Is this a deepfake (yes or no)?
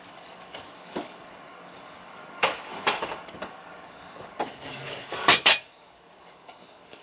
yes